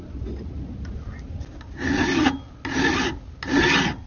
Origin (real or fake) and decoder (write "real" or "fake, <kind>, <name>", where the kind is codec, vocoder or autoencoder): real